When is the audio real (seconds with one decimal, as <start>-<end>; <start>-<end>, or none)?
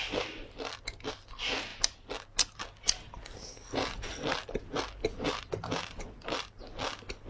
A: 0.0-7.3